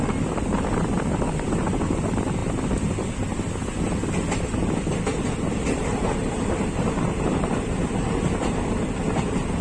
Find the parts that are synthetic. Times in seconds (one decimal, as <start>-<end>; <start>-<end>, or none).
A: none